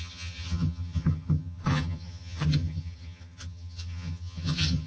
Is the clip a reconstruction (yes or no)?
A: yes